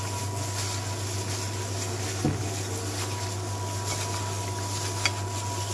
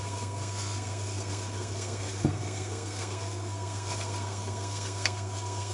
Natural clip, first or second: first